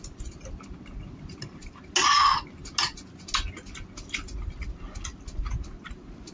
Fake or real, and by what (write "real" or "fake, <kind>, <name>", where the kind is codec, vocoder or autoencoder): real